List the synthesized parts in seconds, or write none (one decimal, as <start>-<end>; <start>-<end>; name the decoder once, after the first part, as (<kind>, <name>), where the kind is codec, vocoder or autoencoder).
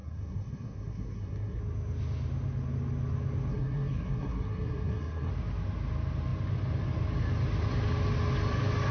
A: 0.0-1.6 (codec, SNAC); 3.5-5.3